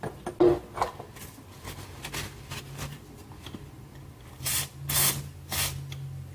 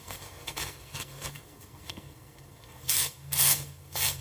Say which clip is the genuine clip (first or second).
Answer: first